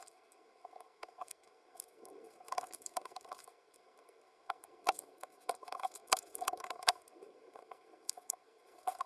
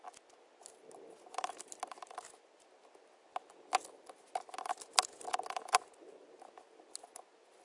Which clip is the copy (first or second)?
first